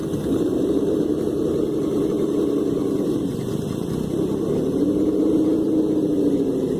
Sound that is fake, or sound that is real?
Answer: real